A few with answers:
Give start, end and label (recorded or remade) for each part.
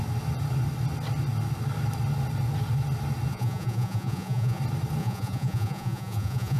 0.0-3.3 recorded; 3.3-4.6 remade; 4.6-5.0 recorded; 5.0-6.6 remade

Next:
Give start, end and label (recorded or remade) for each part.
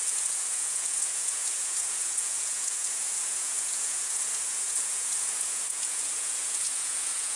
0.0-7.4 remade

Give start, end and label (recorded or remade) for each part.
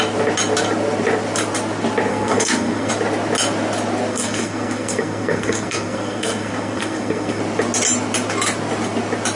0.0-2.1 recorded; 2.1-2.9 remade; 2.9-4.1 recorded; 4.1-7.4 remade; 7.4-9.4 recorded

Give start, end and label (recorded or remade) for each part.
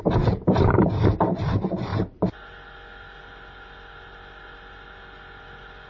0.0-5.9 recorded